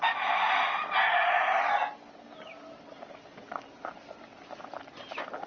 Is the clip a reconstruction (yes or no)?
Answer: no